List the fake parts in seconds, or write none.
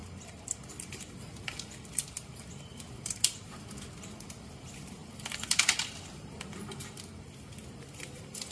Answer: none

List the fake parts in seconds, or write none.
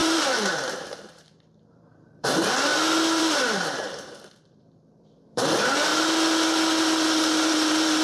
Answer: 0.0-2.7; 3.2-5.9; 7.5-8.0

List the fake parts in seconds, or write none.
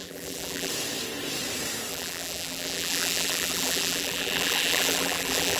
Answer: 0.0-0.7; 1.9-5.6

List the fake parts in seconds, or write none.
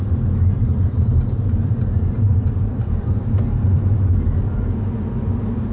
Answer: 0.7-4.1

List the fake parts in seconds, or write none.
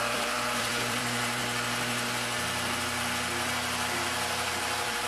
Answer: 0.0-1.4; 4.5-5.1